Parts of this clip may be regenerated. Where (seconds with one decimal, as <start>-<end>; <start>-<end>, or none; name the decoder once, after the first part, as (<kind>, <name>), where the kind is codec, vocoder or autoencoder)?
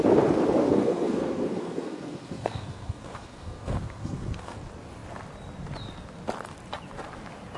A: 0.6-4.6 (codec, SNAC)